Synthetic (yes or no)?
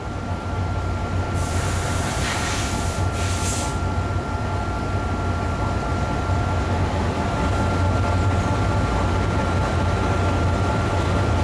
no